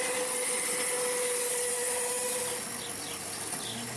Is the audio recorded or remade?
recorded